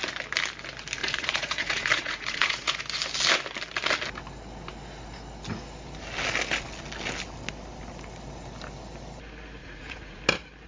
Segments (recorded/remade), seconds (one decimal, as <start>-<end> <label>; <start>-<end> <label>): 0.0-1.0 recorded; 1.0-2.8 remade; 2.8-9.6 recorded; 9.6-10.2 remade; 10.2-10.7 recorded